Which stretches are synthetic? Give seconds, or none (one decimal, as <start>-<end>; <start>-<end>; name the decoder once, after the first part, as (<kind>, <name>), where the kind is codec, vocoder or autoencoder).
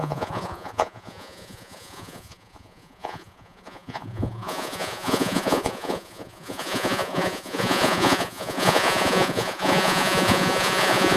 0.0-11.2 (vocoder, Vocos)